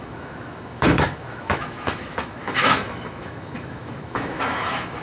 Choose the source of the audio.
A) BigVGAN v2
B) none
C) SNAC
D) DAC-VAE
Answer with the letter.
D